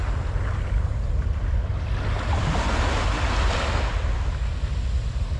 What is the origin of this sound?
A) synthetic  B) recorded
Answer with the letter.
B